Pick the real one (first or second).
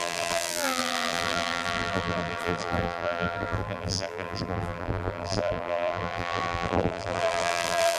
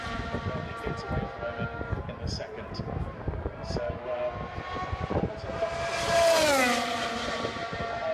second